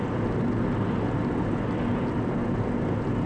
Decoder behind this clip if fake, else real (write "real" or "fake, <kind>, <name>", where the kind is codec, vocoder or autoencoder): real